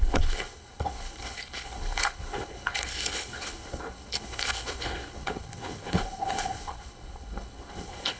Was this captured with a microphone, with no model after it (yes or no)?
no